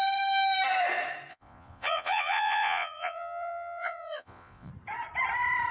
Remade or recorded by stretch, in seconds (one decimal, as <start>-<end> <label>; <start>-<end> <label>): 0.0-1.3 recorded; 1.3-4.7 remade; 4.7-5.7 recorded

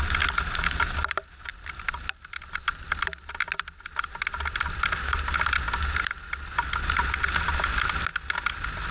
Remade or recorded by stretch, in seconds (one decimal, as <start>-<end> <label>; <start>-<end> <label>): 0.0-8.9 recorded